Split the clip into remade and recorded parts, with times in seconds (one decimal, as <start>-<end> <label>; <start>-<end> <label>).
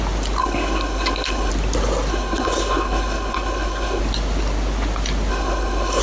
0.0-0.4 recorded; 0.4-1.5 remade; 1.5-2.1 recorded; 2.1-4.0 remade; 4.0-5.3 recorded; 5.3-6.0 remade